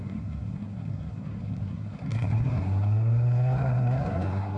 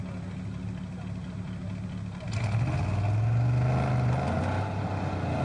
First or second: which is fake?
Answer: first